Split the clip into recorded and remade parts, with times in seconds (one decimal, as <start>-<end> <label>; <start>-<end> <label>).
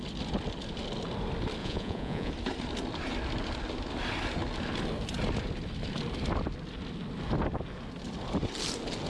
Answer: 0.0-1.6 recorded; 1.6-2.3 remade; 2.3-9.1 recorded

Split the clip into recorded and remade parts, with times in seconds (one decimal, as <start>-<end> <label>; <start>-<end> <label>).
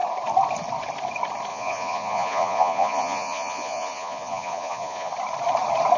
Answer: 0.0-1.5 recorded; 1.5-5.1 remade; 5.1-6.0 recorded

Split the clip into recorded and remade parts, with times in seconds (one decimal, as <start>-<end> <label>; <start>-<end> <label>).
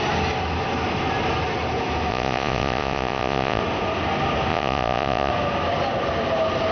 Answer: 0.0-2.1 recorded; 2.1-3.6 remade; 3.6-4.5 recorded; 4.5-5.3 remade; 5.3-6.7 recorded